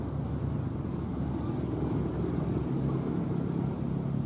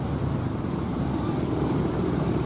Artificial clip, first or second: second